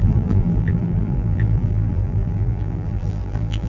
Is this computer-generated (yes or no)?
yes